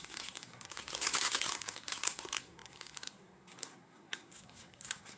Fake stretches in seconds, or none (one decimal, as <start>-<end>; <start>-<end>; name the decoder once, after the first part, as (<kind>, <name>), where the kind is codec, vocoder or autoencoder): 0.0-5.2 (codec, SNAC)